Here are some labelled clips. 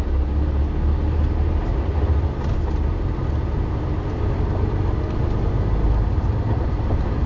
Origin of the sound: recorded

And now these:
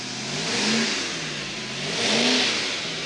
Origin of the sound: recorded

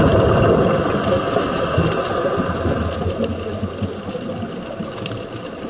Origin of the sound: recorded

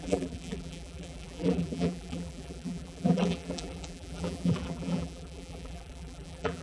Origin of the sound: remade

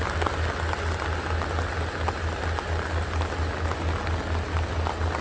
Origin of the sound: recorded